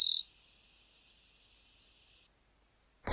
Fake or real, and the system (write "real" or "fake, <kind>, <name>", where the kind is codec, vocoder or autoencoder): real